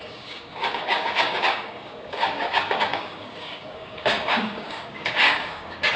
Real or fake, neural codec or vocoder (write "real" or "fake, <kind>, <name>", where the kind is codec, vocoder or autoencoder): fake, codec, DAC